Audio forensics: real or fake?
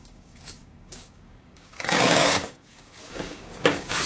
fake